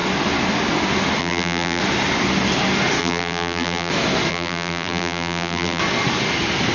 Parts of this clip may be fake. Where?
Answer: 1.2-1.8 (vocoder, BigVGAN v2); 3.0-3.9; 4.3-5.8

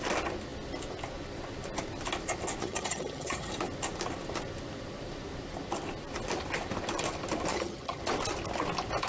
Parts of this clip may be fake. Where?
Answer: 2.6-3.5 (vocoder, HiFi-GAN); 7.5-8.0

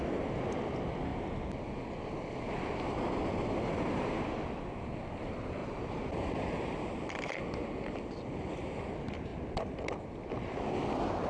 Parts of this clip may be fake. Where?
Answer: 5.6-8.1 (vocoder, BigVGAN v2)

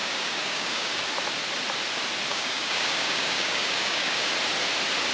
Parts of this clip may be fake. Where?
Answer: 0.0-1.0 (codec, DAC); 2.3-4.3